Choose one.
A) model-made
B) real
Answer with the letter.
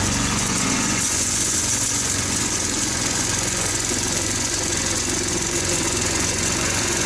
A